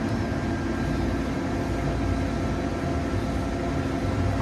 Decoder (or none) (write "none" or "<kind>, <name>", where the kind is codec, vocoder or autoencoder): none